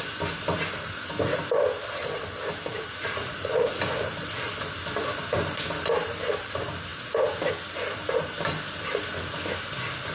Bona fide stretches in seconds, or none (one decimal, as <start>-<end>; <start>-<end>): 0.0-2.7; 3.7-10.1